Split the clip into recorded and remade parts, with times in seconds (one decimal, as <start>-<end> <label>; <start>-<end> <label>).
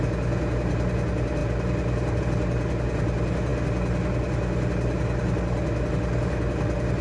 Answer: 0.0-7.0 recorded